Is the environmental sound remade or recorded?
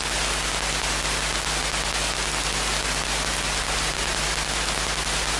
recorded